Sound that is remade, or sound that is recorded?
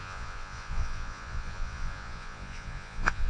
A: remade